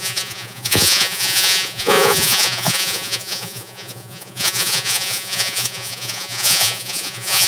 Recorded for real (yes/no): no